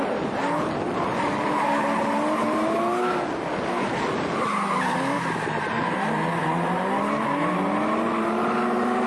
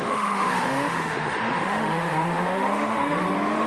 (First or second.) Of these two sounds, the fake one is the second